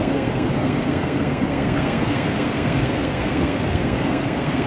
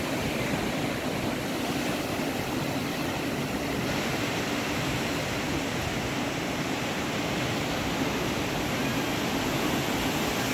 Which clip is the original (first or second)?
second